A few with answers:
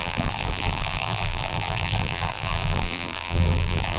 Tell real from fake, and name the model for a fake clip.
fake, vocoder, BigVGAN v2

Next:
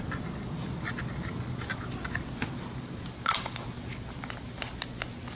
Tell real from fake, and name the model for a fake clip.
real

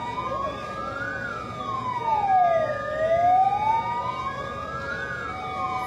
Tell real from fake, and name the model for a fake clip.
real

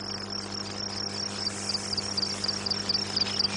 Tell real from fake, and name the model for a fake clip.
real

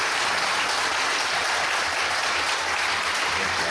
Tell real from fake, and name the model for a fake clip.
fake, vocoder, BigVGAN v2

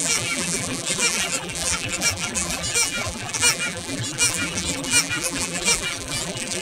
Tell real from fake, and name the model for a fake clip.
fake, vocoder, BigVGAN v2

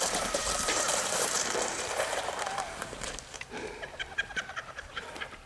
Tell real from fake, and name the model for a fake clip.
fake, vocoder, BigVGAN v2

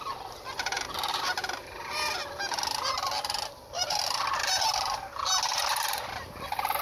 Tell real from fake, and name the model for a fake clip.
fake, vocoder, BigVGAN v2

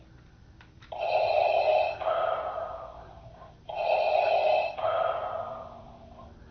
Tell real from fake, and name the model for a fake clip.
fake, vocoder, BigVGAN v2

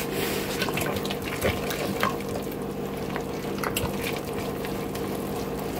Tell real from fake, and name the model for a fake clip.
real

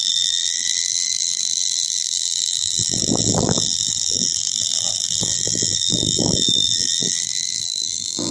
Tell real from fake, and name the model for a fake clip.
fake, vocoder, BigVGAN v2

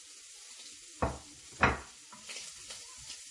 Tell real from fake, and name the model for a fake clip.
real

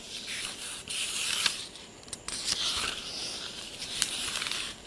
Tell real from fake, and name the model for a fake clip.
fake, vocoder, BigVGAN v2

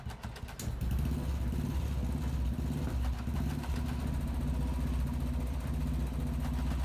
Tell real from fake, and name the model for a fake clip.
real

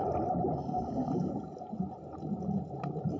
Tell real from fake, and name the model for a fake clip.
fake, vocoder, BigVGAN v2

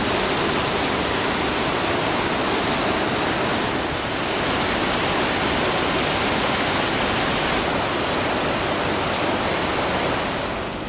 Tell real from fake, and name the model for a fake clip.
real